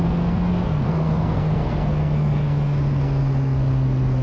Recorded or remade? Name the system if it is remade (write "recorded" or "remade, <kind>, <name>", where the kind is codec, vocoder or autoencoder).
remade, codec, SNAC